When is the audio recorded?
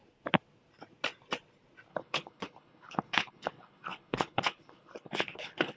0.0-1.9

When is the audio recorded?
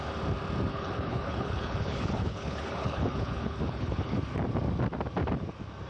0.0-0.7; 4.2-5.9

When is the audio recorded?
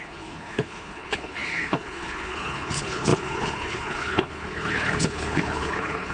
none